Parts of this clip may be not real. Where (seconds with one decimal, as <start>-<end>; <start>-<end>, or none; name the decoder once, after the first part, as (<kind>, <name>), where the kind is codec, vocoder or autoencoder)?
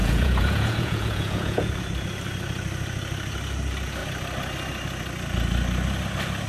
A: 0.0-1.7 (vocoder, Vocos)